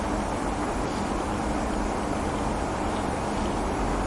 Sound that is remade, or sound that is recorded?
recorded